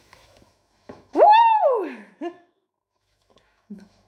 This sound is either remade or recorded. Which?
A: remade